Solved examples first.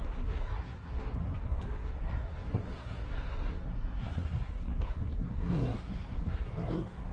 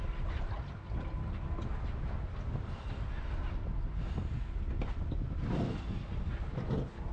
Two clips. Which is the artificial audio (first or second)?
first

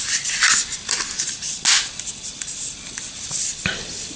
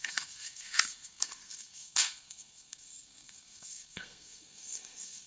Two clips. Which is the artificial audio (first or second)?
second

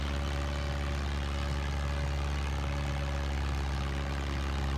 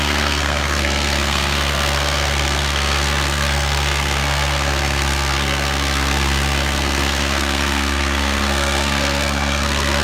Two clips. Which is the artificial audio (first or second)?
second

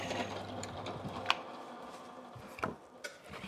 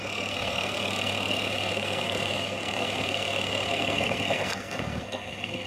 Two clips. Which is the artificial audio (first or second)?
second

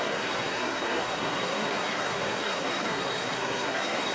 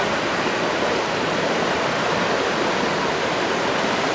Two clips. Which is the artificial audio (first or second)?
first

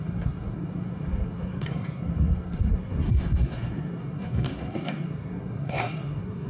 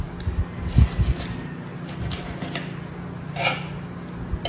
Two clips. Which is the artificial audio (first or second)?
first